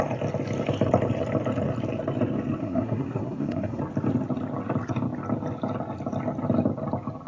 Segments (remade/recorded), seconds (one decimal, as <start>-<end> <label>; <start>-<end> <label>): 0.0-2.6 recorded; 2.6-3.8 remade; 3.8-7.3 recorded